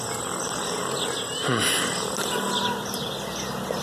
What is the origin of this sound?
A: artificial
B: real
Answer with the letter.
B